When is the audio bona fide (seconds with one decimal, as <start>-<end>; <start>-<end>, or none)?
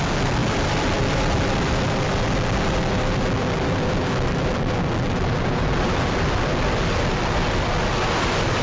0.0-8.6